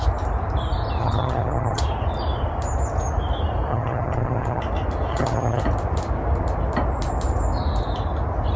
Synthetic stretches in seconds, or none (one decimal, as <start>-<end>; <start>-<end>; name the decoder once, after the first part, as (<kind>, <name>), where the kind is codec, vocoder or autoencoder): 1.0-1.8 (vocoder, HiFi-GAN); 3.7-4.6; 5.1-5.6